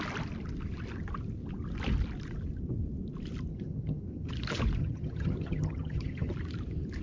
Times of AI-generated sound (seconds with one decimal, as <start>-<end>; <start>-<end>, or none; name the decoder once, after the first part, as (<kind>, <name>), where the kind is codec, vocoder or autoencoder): 3.5-4.3 (vocoder, HiFi-GAN); 4.8-6.3